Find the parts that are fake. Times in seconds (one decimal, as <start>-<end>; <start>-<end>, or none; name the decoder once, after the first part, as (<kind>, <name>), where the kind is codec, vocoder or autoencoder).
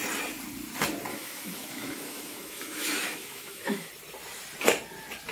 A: 1.1-3.9 (autoencoder, DAC-VAE)